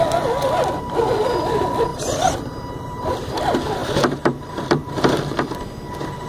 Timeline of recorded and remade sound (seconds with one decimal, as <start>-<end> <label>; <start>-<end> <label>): 0.0-1.9 recorded; 1.9-3.3 remade; 3.3-3.8 recorded; 3.8-4.9 remade; 4.9-6.3 recorded